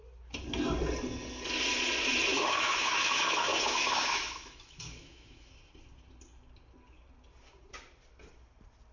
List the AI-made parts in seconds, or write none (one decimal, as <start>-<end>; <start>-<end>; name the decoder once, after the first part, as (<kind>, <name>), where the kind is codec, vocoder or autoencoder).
2.3-5.5 (autoencoder, DAC-VAE)